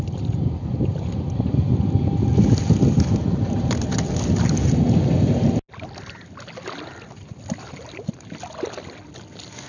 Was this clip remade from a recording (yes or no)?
no